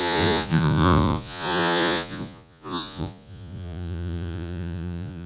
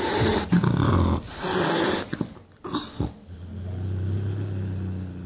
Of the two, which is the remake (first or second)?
first